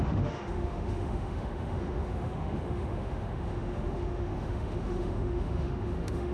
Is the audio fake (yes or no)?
yes